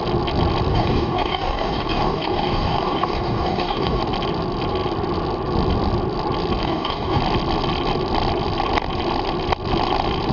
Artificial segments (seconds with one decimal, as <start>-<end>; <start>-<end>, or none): 0.7-4.0; 6.6-7.2